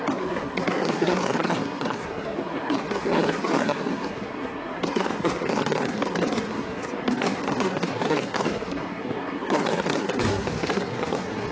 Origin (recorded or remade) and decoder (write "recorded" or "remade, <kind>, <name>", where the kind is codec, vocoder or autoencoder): remade, codec, SNAC